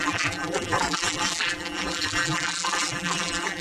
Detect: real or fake fake